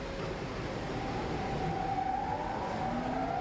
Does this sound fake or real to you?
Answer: real